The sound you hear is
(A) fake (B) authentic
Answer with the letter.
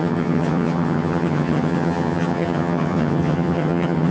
A